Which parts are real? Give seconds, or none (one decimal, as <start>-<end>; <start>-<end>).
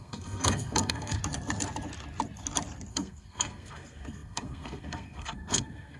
1.2-2.9